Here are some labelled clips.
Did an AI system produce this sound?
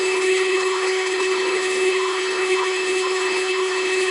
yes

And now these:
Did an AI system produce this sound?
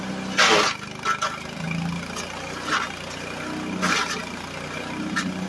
no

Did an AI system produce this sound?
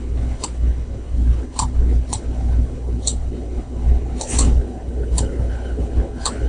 yes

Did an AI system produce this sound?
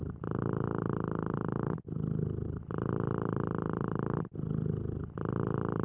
no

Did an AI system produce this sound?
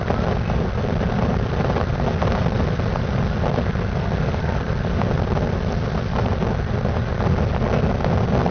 no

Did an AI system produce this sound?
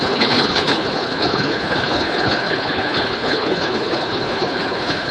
yes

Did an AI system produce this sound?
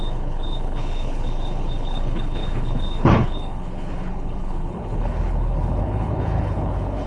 yes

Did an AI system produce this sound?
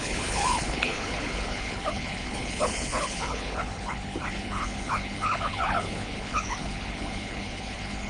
yes